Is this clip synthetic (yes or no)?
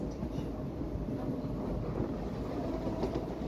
no